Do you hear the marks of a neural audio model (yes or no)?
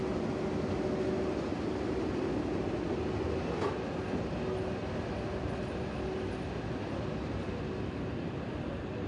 no